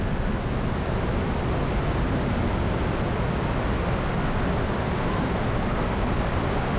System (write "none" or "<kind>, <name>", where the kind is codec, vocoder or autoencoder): none